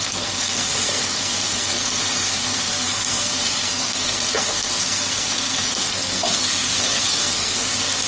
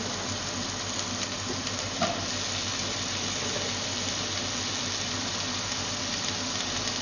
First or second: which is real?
second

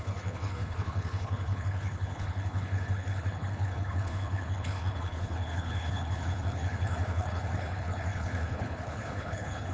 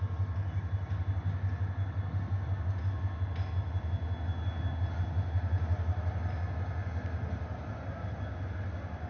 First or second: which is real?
second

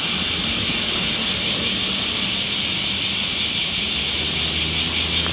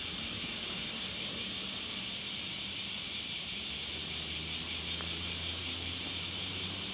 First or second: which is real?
first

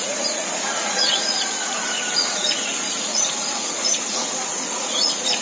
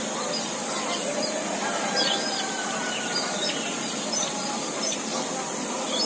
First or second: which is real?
second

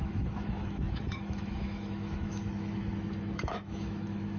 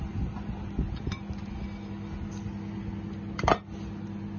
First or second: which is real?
second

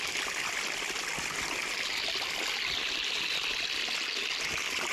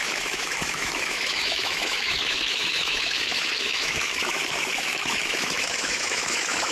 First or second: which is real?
first